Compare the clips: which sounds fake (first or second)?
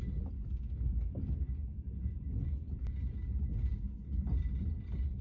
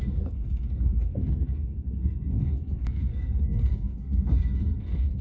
second